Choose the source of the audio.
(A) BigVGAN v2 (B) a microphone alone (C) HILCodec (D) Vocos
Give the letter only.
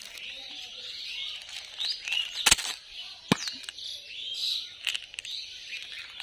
B